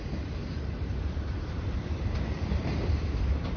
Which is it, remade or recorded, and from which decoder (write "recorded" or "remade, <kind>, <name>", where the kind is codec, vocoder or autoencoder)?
remade, vocoder, BigVGAN v2